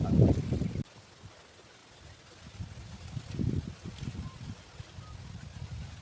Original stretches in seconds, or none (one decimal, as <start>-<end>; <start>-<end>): 0.0-6.0